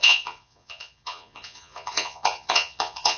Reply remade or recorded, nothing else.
remade